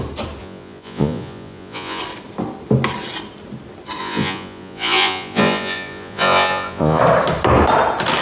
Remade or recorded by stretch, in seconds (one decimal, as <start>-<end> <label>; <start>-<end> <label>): 0.0-0.4 recorded; 0.4-2.0 remade; 2.0-4.0 recorded; 4.0-7.0 remade; 7.0-8.2 recorded